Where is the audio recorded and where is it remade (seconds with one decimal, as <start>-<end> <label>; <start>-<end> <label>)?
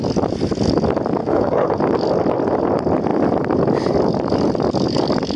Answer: 0.0-1.2 recorded; 1.2-1.8 remade; 1.8-5.4 recorded